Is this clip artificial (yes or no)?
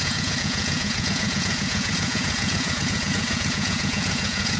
yes